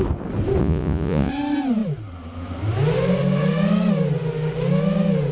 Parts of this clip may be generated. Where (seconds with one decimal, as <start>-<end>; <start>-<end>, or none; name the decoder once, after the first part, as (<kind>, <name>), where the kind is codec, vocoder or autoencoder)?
0.6-1.3 (vocoder, Vocos)